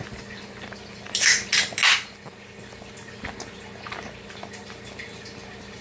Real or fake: real